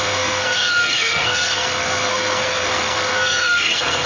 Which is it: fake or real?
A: fake